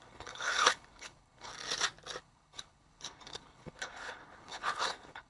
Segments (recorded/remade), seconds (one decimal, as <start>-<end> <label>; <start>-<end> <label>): 0.0-1.5 remade; 1.5-2.2 recorded; 2.2-5.3 remade